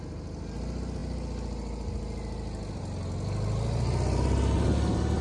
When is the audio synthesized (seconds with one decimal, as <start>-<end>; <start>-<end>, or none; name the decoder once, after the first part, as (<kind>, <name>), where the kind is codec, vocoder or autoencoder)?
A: none